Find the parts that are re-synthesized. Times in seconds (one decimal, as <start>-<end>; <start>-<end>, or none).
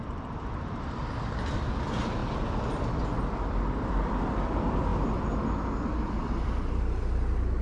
0.0-2.2; 3.9-4.9; 6.1-7.6